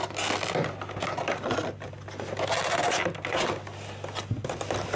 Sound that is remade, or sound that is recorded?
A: recorded